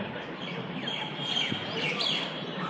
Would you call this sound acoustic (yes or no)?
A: no